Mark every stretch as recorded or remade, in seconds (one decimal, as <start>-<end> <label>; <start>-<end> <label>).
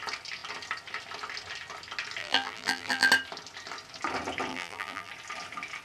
0.0-2.2 recorded; 2.2-3.1 remade; 3.1-4.5 recorded; 4.5-5.1 remade; 5.1-5.8 recorded